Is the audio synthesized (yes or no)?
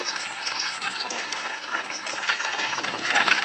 yes